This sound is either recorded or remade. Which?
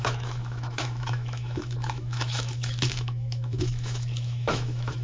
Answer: remade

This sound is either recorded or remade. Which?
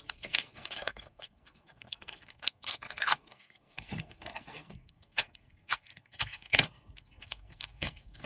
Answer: remade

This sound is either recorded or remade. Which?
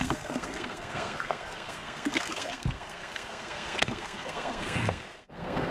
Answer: remade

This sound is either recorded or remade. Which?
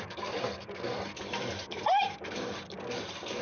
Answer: remade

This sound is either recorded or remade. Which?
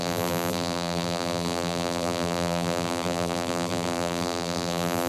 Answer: remade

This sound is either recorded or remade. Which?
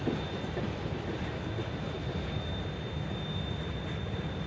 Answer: recorded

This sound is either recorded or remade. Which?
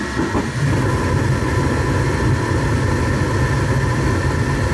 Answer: recorded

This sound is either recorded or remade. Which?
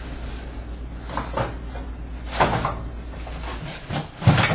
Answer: recorded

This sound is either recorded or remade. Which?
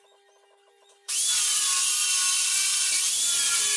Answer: recorded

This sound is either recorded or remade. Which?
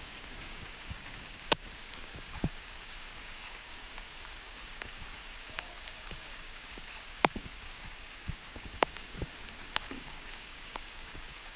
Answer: remade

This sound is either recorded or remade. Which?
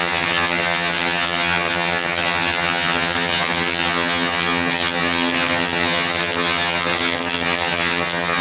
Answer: remade